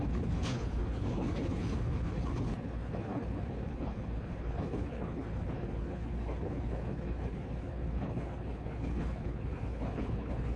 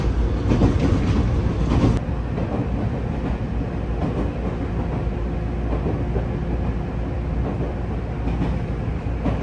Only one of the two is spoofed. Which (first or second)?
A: first